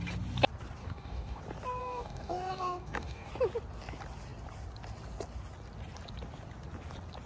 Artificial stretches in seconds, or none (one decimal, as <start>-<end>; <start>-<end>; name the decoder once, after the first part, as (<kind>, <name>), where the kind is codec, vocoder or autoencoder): 0.8-1.4 (codec, DAC); 1.8-3.3